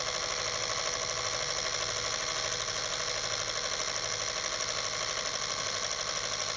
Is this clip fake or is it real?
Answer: real